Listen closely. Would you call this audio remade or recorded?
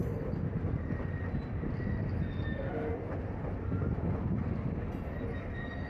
recorded